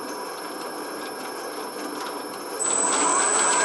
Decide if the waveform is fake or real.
real